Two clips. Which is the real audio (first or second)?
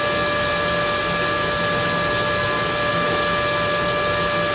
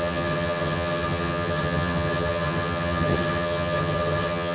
first